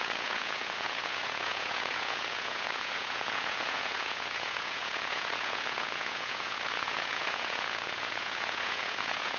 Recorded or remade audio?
remade